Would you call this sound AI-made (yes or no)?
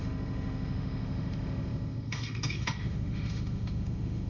yes